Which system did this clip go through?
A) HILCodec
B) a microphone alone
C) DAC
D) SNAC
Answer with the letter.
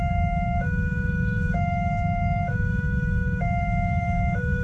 C